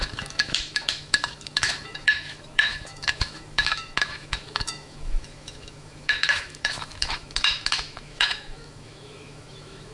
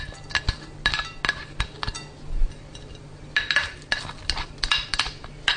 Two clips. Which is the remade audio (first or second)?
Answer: first